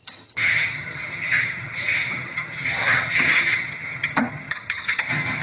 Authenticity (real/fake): fake